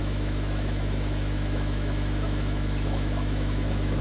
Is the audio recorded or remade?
remade